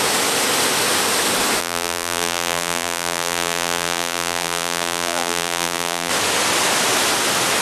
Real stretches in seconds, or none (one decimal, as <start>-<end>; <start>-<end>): 0.0-1.6; 6.1-7.6